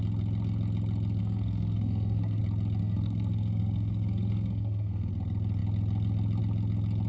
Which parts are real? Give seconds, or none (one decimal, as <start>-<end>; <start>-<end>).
0.0-1.2; 2.4-2.8; 5.1-7.1